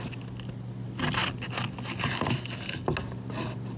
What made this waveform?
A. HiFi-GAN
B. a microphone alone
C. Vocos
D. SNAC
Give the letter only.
B